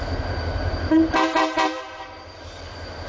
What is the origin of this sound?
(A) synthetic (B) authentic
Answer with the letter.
A